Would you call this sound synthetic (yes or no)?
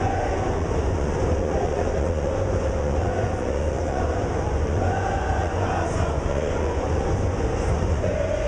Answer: yes